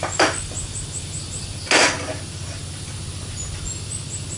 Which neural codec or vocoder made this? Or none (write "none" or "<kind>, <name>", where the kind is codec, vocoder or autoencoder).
none